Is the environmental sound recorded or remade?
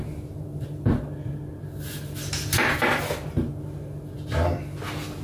recorded